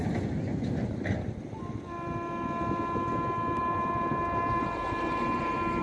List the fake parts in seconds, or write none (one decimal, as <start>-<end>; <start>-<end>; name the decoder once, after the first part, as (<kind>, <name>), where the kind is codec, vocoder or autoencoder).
3.6-5.8 (vocoder, BigVGAN v2)